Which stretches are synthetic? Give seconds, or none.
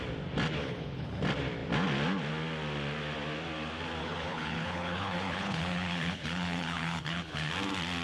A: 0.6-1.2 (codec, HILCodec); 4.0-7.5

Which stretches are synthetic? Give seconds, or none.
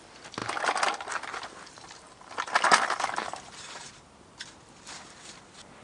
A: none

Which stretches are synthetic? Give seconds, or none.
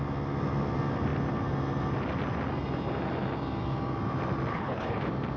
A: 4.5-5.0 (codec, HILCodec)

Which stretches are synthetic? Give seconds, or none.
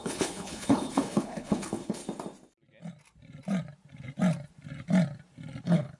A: 0.0-2.0 (codec, HILCodec); 5.6-6.0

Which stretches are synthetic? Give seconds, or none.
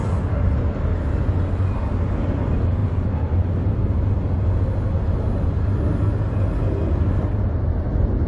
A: none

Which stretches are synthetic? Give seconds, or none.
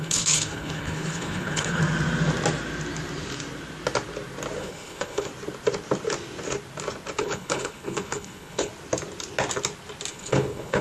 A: 0.0-1.8 (codec, HILCodec); 4.6-5.3; 7.2-8.7; 10.1-10.8